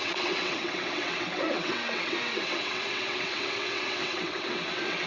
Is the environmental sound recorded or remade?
remade